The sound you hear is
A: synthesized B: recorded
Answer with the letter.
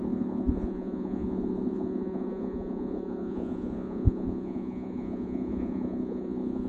A